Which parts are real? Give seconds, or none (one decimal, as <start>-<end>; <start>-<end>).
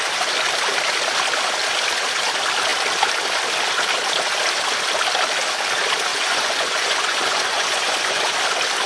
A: 0.0-6.1; 8.3-8.9